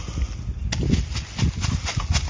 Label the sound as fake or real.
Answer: real